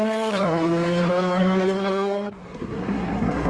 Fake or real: fake